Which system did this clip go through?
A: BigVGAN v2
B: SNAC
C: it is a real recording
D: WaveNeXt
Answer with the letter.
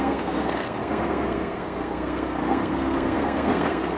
B